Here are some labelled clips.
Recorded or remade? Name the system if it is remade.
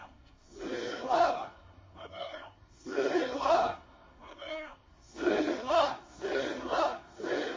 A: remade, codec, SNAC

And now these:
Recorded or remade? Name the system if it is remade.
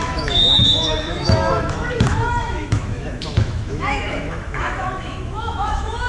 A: remade, autoencoder, DAC-VAE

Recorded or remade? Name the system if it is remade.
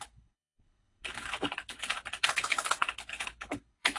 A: remade, codec, HILCodec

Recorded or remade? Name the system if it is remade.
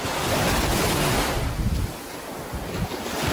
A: recorded